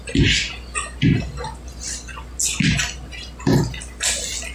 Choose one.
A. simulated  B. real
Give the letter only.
B